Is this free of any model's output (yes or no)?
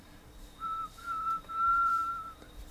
no